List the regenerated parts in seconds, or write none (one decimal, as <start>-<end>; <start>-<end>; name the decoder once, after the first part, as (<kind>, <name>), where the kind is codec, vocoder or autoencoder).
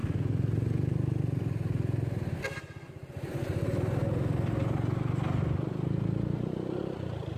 none